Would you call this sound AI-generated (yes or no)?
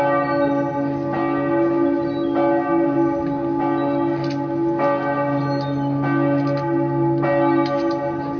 no